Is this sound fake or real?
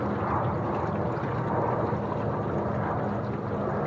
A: real